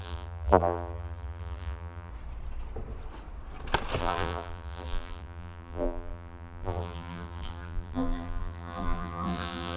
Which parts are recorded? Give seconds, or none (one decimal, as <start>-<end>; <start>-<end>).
2.1-4.0